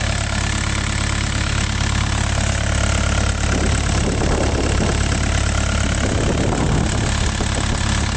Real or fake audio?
real